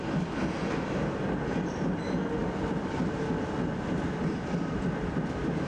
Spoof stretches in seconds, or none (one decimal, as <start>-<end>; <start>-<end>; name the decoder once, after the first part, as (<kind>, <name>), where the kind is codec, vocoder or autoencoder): none